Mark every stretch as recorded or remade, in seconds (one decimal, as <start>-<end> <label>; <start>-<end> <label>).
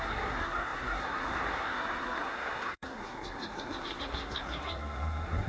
0.0-5.5 remade